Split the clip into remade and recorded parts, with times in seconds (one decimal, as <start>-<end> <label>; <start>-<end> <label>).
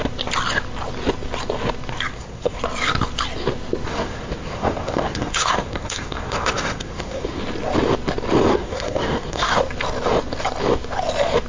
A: 0.0-2.1 recorded; 2.1-2.6 remade; 2.6-3.9 recorded; 3.9-7.4 remade; 7.4-8.5 recorded; 8.5-9.5 remade; 9.5-11.5 recorded